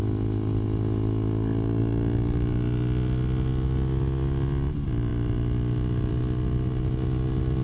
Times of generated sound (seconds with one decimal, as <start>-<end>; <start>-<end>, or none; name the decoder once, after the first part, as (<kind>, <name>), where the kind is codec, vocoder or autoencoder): none